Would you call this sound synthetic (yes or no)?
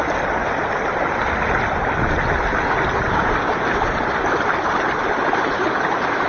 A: no